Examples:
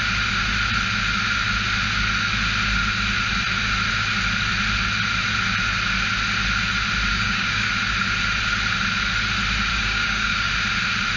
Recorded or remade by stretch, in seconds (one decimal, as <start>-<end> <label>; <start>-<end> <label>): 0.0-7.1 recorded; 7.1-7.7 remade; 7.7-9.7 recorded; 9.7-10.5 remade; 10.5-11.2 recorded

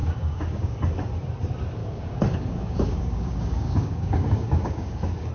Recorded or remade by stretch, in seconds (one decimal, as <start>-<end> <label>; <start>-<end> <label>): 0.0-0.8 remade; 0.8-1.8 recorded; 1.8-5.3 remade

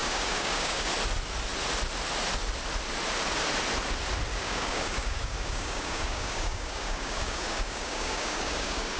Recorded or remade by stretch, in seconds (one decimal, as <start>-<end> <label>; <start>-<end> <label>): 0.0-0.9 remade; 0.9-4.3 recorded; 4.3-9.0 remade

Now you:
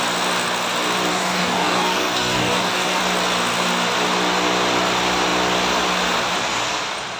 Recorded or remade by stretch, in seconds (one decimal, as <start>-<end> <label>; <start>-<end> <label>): 0.0-1.1 recorded; 1.1-3.0 remade; 3.0-7.2 recorded